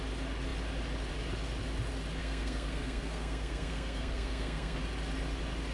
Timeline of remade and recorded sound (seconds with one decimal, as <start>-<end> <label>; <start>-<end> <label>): 0.0-2.2 recorded; 2.2-4.8 remade; 4.8-5.7 recorded